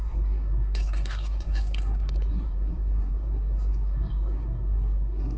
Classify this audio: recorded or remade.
remade